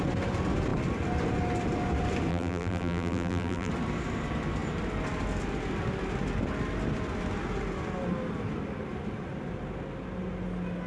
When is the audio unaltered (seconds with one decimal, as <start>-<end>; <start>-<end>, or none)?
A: 0.0-2.3; 3.7-10.9